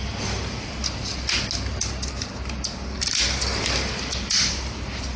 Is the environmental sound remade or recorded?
recorded